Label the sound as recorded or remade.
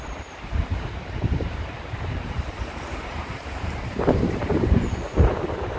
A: remade